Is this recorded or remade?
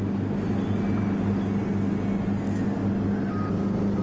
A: recorded